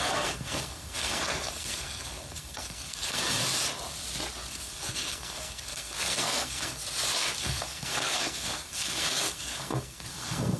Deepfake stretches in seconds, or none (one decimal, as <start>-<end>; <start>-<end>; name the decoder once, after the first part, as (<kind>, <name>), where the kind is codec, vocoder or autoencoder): 0.0-3.4 (codec, SNAC); 4.5-6.8; 7.4-10.6